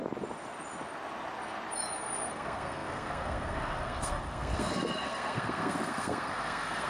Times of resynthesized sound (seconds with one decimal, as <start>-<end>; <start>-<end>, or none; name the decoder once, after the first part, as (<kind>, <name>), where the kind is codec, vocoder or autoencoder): 2.3-6.9 (codec, SNAC)